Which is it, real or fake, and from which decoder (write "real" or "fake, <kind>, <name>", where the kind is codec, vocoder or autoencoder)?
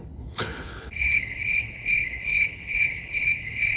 fake, codec, HILCodec